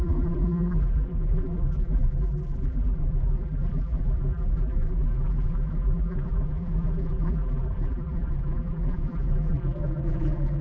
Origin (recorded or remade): remade